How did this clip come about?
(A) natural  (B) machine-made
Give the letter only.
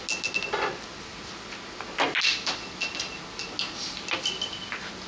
A